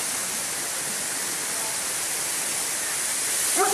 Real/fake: real